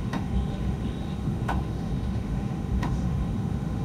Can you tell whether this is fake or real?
fake